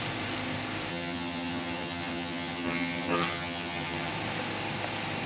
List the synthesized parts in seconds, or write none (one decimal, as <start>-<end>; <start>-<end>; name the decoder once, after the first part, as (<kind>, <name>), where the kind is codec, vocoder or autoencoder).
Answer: 0.9-4.1 (vocoder, HiFi-GAN)